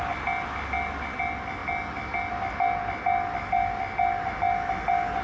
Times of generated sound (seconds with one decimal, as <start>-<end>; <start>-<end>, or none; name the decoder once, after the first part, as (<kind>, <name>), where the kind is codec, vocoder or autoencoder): none